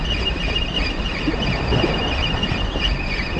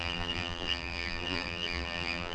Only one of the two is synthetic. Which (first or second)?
second